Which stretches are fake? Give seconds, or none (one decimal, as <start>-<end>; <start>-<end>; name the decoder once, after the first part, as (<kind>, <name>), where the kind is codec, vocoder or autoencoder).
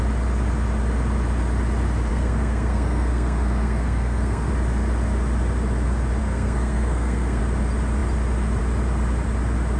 2.1-4.5 (codec, SNAC); 6.2-7.4